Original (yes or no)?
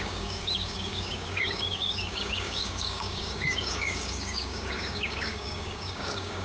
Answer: no